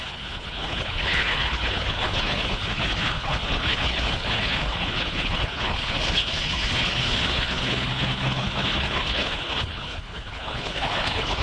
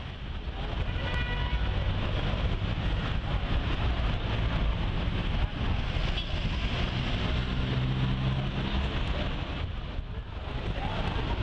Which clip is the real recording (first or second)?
second